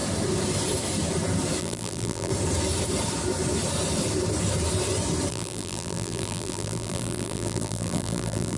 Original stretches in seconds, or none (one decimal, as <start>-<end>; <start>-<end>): 0.0-1.6; 2.3-5.3